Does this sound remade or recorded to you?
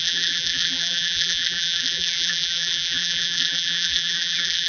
remade